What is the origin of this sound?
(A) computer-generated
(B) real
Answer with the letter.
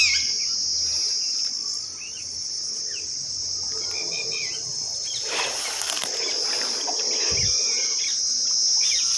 B